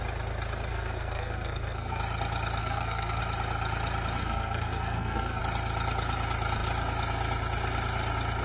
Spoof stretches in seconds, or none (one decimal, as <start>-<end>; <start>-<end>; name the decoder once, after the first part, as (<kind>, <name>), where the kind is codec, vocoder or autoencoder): 0.7-2.0 (codec, SNAC); 2.6-3.2; 4.2-5.4

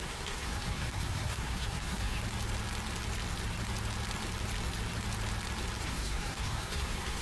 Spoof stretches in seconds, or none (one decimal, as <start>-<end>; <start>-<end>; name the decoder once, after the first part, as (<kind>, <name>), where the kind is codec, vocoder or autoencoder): 0.0-2.2 (codec, SNAC); 5.8-7.2